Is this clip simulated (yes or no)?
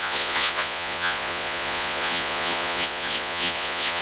yes